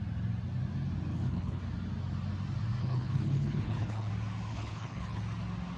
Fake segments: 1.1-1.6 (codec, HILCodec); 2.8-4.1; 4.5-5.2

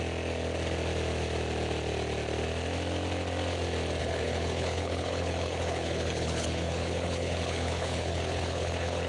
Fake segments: 4.0-9.1 (codec, HILCodec)

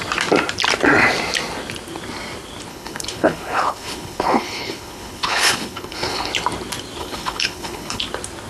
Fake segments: 2.7-6.3 (codec, HILCodec); 7.0-8.0

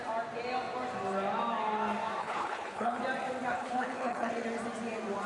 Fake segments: 2.2-3.0 (codec, HILCodec); 3.5-4.3

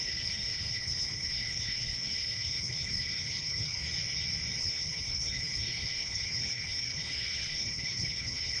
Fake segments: 0.0-3.8 (codec, HILCodec); 4.6-8.6

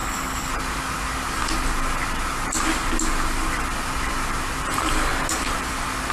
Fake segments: 0.0-0.5 (codec, HILCodec)

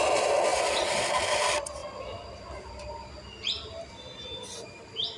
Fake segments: none

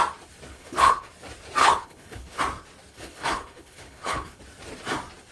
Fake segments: 0.5-1.1 (codec, HILCodec); 1.6-2.4; 2.9-4.4